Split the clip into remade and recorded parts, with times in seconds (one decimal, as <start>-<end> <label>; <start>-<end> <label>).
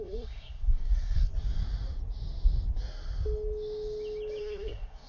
0.0-1.3 remade; 1.3-4.4 recorded; 4.4-5.1 remade